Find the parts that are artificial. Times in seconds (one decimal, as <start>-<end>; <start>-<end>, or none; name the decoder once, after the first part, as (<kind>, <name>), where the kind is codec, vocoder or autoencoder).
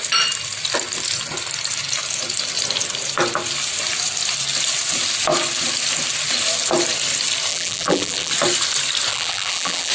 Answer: 7.5-8.3 (vocoder, BigVGAN v2); 9.1-9.9